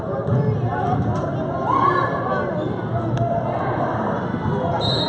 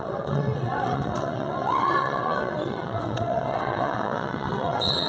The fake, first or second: second